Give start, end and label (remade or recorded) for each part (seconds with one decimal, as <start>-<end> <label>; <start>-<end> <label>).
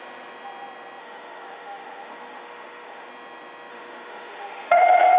0.0-1.0 recorded; 1.0-3.1 remade; 3.1-3.7 recorded; 3.7-4.8 remade; 4.8-5.2 recorded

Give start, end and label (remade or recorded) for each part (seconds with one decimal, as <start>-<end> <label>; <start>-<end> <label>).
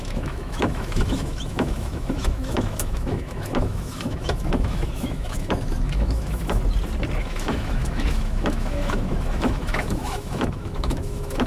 0.0-6.6 remade; 6.6-7.2 recorded; 7.2-11.5 remade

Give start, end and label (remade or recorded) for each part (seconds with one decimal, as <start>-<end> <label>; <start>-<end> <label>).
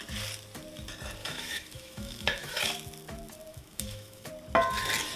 0.0-1.2 recorded; 1.2-2.6 remade; 2.6-3.5 recorded; 3.5-4.3 remade; 4.3-5.2 recorded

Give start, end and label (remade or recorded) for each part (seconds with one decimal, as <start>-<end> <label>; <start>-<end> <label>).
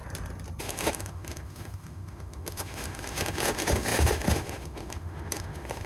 0.0-0.6 recorded; 0.6-5.9 remade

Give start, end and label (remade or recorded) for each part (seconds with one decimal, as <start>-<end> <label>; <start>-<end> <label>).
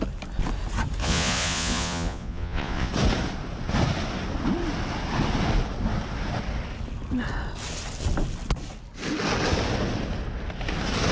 0.0-1.0 recorded; 1.0-2.9 remade; 2.9-11.1 recorded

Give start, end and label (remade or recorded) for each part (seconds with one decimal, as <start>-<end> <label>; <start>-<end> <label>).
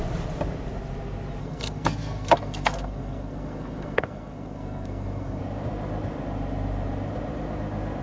0.0-1.4 recorded; 1.4-5.4 remade; 5.4-8.0 recorded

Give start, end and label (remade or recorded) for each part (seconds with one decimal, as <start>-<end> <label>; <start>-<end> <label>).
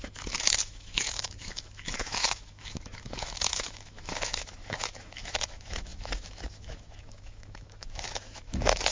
0.0-8.9 remade